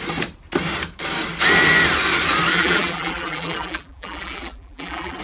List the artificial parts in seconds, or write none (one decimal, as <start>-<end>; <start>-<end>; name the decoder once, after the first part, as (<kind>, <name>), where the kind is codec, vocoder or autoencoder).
2.5-5.2 (vocoder, BigVGAN v2)